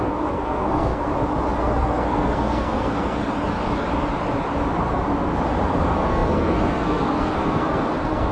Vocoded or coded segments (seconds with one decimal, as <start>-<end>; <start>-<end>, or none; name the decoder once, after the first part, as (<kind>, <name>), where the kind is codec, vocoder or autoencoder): 0.0-1.1 (codec, SNAC); 1.6-3.2; 5.8-8.3